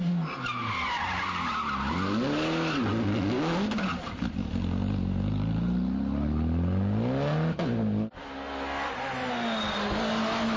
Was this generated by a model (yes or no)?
no